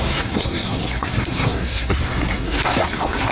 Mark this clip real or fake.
fake